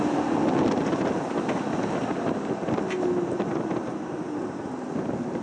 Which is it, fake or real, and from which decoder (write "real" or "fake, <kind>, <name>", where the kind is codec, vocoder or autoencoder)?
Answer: real